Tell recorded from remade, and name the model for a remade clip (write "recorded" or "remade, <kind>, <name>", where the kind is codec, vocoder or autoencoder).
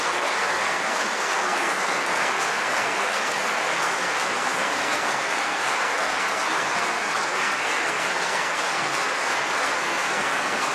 remade, codec, SNAC